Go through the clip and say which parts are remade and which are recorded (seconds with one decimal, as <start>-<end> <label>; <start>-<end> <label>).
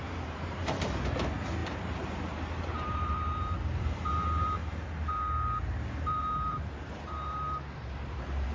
0.0-4.6 remade; 4.6-5.9 recorded; 5.9-8.5 remade